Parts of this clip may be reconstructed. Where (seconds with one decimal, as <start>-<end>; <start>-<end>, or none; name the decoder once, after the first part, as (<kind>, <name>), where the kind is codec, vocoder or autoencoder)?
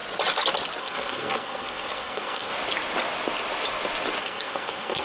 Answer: 0.8-2.5 (codec, SNAC); 4.2-5.0